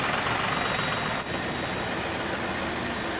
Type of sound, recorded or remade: recorded